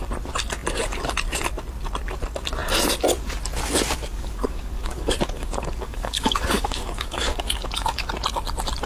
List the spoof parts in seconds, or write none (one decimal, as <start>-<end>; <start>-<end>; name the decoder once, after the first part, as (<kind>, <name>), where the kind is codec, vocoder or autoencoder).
4.1-8.1 (codec, DAC)